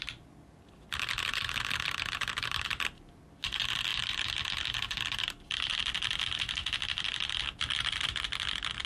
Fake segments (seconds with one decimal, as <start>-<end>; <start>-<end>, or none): none